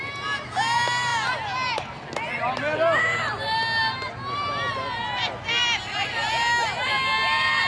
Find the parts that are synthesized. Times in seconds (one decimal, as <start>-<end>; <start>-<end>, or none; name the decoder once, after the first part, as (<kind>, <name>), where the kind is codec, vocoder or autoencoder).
none